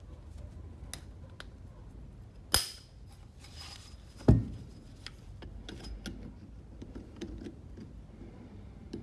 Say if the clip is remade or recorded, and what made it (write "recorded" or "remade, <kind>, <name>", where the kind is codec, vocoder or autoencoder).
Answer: recorded